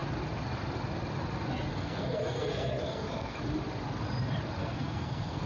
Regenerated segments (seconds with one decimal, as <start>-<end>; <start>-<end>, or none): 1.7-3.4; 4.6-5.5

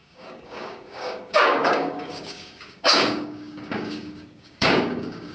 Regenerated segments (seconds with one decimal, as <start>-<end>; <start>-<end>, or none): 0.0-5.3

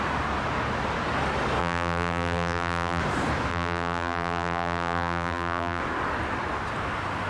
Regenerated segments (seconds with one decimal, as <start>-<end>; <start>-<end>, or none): 1.6-3.0; 3.5-5.8

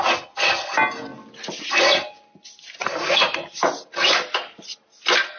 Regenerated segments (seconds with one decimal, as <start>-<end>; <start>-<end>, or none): none